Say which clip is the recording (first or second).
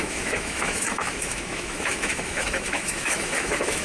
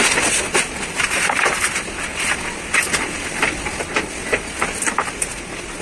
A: second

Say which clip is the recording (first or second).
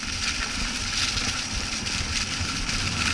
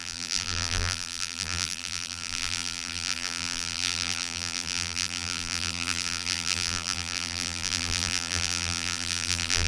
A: first